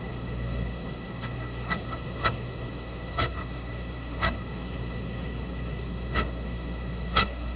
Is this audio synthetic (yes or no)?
yes